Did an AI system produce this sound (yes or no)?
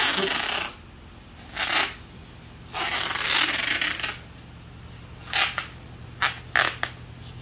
no